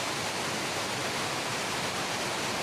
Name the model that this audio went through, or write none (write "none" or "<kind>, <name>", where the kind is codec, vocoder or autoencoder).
none